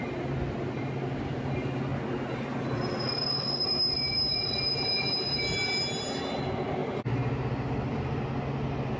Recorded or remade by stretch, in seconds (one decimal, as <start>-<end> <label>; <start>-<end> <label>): 0.0-6.8 recorded; 6.8-8.2 remade; 8.2-9.0 recorded